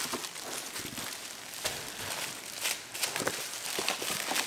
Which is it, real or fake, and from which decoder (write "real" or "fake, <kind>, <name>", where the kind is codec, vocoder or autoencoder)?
real